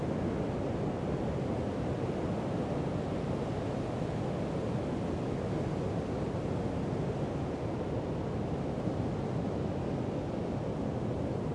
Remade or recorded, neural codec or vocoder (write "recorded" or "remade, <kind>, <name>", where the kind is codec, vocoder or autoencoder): recorded